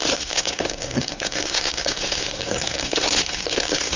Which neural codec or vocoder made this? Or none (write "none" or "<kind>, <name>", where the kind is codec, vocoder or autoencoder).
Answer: codec, SNAC